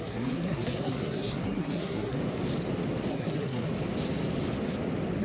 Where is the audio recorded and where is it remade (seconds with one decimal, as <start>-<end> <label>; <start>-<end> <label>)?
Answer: 0.0-2.2 remade; 2.2-3.1 recorded; 3.1-3.7 remade; 3.7-5.2 recorded